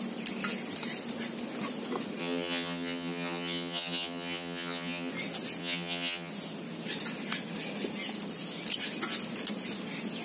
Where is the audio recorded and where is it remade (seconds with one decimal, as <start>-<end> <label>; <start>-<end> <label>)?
0.0-2.2 recorded; 2.2-5.1 remade; 5.1-5.6 recorded; 5.6-6.3 remade; 6.3-10.2 recorded